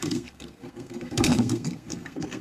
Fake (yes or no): yes